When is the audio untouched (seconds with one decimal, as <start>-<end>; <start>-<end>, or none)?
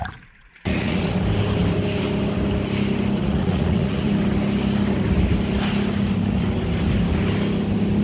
1.1-3.2; 4.1-8.0